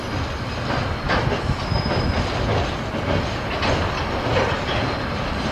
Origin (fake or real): real